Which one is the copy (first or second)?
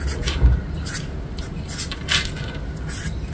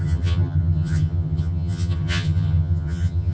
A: second